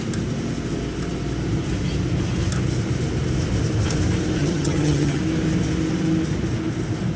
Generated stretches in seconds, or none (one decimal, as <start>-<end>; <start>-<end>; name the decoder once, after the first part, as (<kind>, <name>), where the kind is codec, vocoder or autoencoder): 4.4-5.2 (vocoder, HiFi-GAN)